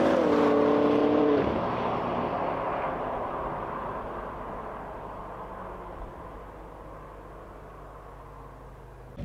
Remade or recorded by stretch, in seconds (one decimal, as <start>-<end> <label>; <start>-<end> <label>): 0.0-1.0 recorded; 1.0-3.8 remade; 3.8-9.2 recorded